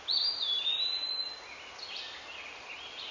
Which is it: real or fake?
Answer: real